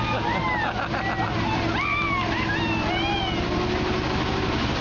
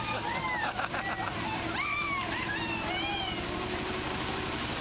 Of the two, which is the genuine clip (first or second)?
first